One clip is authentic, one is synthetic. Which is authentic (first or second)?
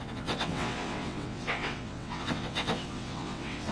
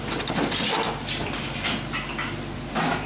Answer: second